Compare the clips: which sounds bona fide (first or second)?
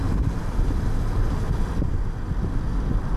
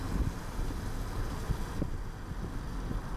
second